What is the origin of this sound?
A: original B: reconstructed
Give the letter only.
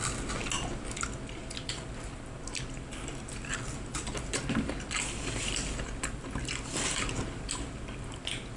A